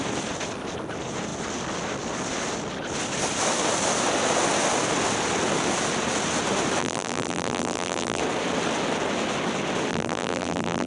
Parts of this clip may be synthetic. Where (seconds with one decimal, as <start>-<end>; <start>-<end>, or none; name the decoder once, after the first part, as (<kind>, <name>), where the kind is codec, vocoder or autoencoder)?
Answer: 6.8-8.2 (vocoder, BigVGAN v2); 9.9-10.9